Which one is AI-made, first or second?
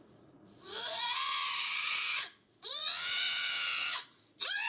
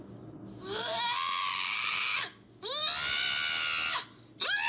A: first